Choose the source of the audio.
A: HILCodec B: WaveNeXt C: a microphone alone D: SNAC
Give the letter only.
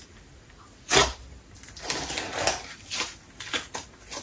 C